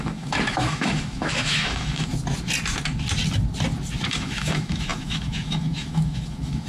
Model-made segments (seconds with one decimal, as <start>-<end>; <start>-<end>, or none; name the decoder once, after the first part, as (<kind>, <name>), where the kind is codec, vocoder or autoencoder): 0.0-2.1 (autoencoder, DAC-VAE); 4.1-6.7

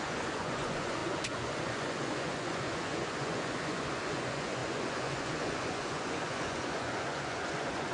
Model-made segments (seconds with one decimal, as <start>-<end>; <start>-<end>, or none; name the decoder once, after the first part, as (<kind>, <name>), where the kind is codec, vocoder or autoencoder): 0.0-7.9 (vocoder, Vocos)

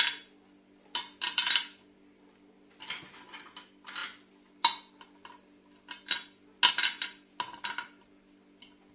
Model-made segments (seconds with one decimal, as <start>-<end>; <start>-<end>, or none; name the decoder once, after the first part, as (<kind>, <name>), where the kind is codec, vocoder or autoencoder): none

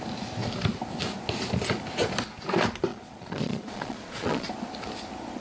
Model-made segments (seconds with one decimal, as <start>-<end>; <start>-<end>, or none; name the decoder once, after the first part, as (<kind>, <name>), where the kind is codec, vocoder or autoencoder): 2.9-4.5 (vocoder, Vocos)

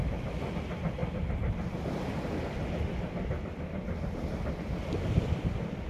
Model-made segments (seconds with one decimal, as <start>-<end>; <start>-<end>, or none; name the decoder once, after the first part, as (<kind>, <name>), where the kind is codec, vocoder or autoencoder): none

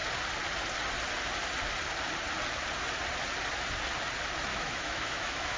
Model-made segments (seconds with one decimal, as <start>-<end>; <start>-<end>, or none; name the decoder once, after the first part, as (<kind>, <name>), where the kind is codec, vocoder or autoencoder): 4.5-5.6 (autoencoder, DAC-VAE)